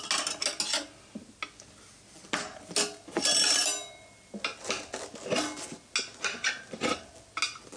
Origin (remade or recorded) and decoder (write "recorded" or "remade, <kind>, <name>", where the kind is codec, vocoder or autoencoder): recorded